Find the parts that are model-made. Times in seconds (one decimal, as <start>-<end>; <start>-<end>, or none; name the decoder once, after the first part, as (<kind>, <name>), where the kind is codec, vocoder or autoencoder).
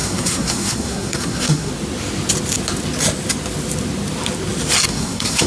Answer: 0.0-1.7 (codec, SNAC); 4.9-5.5